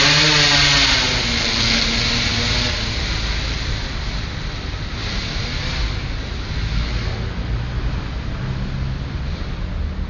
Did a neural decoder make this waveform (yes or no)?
no